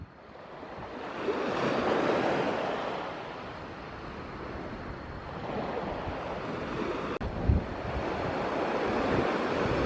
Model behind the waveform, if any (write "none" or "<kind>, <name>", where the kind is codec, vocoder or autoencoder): none